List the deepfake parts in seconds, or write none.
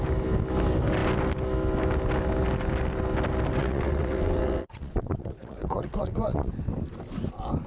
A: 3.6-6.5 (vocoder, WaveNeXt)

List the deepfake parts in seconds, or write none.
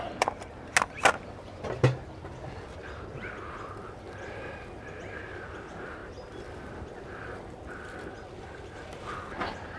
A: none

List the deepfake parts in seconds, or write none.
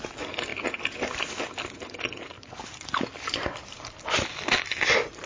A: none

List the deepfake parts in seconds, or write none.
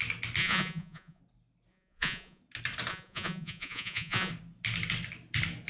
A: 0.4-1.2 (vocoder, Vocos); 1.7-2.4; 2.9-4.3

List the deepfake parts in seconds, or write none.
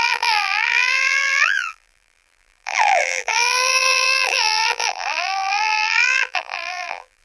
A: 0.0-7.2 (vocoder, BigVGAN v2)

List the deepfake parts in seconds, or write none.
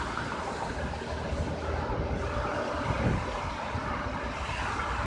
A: none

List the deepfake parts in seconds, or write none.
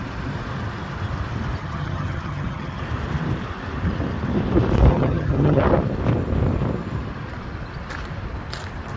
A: 1.6-2.8 (vocoder, HiFi-GAN); 4.9-5.6